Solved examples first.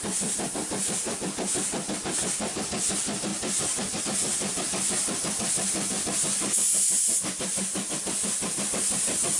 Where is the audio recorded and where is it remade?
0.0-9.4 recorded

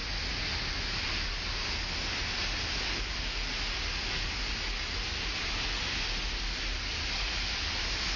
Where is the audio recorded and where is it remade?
0.0-8.2 recorded

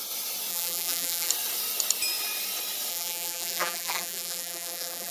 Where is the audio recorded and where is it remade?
0.0-0.5 recorded; 0.5-1.3 remade; 1.3-2.9 recorded; 2.9-5.1 remade

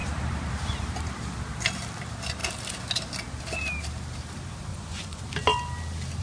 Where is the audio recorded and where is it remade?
0.0-4.7 recorded; 4.7-5.2 remade; 5.2-6.2 recorded

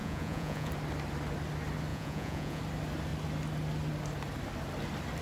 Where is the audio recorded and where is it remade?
0.0-0.7 remade; 0.7-1.9 recorded; 1.9-2.6 remade; 2.6-5.2 recorded

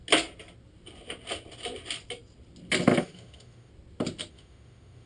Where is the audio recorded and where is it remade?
0.0-3.0 recorded; 3.0-3.7 remade; 3.7-4.3 recorded; 4.3-5.1 remade

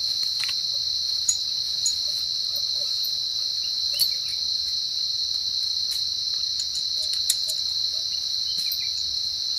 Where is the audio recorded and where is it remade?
0.0-1.7 remade; 1.7-2.8 recorded; 2.8-4.3 remade; 4.3-7.2 recorded; 7.2-7.8 remade; 7.8-9.6 recorded

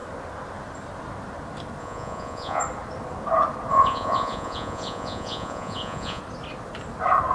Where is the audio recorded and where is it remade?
0.0-1.8 recorded; 1.8-2.6 remade; 2.6-3.7 recorded; 3.7-6.2 remade; 6.2-7.3 recorded